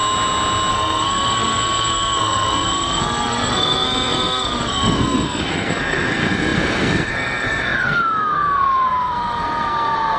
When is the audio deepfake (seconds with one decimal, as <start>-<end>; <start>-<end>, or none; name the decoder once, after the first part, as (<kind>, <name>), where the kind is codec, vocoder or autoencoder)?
0.7-10.2 (codec, SNAC)